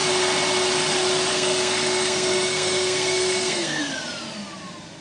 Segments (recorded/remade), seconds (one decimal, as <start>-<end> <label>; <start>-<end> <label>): 0.0-1.3 recorded; 1.3-3.8 remade; 3.8-5.0 recorded